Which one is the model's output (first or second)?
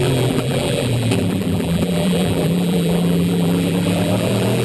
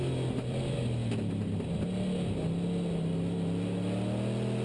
first